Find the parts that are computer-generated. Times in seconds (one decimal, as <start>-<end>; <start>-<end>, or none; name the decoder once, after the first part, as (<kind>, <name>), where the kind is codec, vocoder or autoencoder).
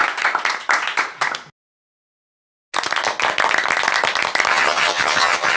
4.5-5.6 (vocoder, HiFi-GAN)